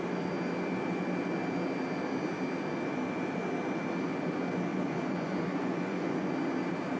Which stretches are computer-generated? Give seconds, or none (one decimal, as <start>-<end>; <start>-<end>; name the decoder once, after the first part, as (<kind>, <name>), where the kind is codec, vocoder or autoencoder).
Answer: 4.7-6.3 (vocoder, Vocos)